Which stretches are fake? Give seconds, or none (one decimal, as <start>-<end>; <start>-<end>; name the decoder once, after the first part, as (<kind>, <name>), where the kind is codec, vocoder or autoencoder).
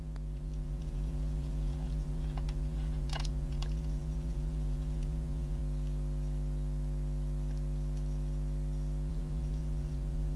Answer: 0.0-5.6 (vocoder, Vocos); 9.1-10.4